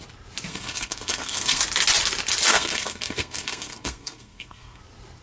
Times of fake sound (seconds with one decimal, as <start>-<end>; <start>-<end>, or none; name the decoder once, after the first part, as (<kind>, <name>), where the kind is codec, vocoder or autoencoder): 0.5-1.6 (codec, SNAC); 2.5-4.8